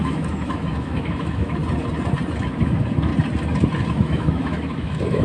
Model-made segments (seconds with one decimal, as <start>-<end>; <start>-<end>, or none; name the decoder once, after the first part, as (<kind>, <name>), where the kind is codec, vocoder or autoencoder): 0.0-1.6 (autoencoder, DAC-VAE); 2.6-3.1; 3.9-5.2